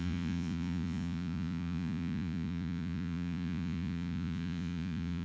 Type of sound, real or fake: fake